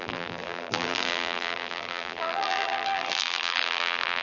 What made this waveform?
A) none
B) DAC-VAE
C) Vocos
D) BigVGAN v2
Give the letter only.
D